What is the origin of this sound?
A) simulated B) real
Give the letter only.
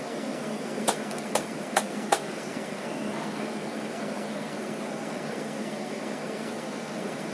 A